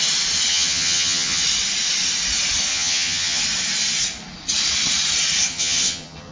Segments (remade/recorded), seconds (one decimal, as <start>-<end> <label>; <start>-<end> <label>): 0.0-0.5 recorded; 0.5-1.4 remade; 1.4-2.7 recorded; 2.7-3.4 remade; 3.4-5.5 recorded; 5.5-6.3 remade